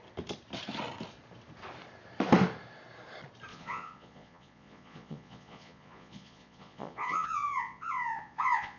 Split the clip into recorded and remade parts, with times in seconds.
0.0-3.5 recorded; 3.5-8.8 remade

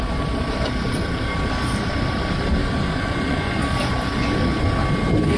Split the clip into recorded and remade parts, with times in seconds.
0.0-2.6 recorded; 2.6-3.6 remade; 3.6-5.4 recorded

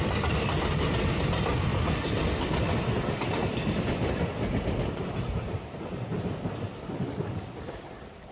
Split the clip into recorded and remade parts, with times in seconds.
0.0-8.3 recorded

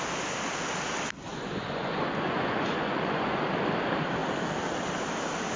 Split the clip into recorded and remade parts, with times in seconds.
0.0-1.3 recorded; 1.3-3.4 remade; 3.4-5.6 recorded

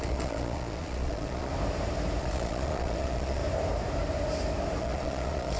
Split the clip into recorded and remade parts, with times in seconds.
0.0-1.5 remade; 1.5-2.2 recorded; 2.2-3.4 remade; 3.4-4.8 recorded; 4.8-5.6 remade